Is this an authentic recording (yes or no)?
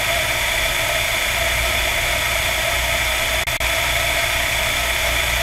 yes